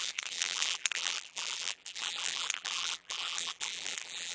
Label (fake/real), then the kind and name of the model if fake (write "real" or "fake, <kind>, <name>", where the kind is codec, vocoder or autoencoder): fake, vocoder, BigVGAN v2